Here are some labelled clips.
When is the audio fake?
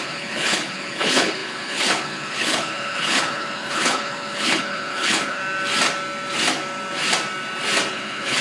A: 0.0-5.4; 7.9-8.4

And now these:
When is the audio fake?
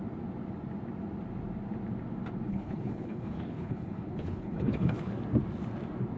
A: 2.5-5.1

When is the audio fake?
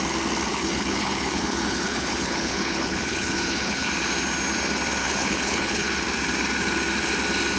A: 0.5-3.9; 5.0-5.9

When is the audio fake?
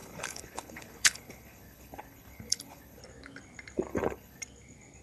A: 0.0-3.0; 3.9-4.4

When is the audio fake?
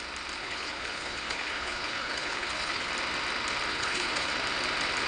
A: 0.4-2.9; 3.7-4.3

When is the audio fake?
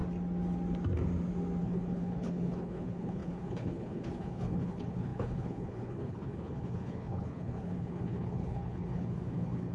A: 1.6-9.7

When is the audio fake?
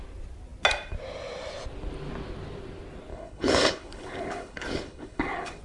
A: 3.1-5.6